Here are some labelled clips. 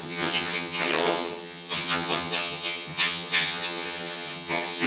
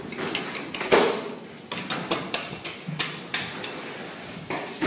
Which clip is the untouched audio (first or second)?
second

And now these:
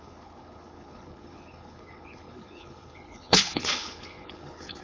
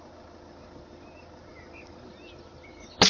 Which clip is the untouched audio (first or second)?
second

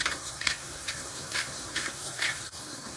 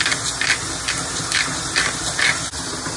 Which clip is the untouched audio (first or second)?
second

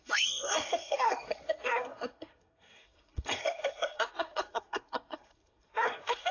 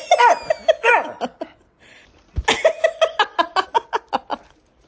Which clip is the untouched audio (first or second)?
second